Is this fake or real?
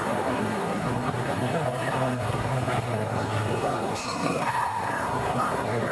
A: fake